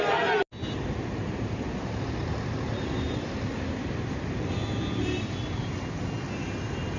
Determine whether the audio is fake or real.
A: real